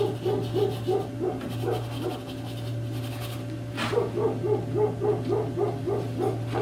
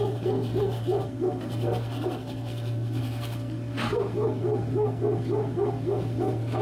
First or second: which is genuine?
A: first